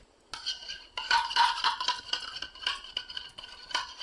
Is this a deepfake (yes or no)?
no